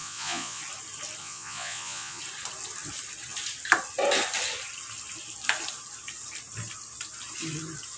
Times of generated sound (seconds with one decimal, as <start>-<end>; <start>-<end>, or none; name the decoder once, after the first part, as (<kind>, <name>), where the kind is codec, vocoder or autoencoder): 0.0-0.6 (vocoder, Vocos); 1.2-2.2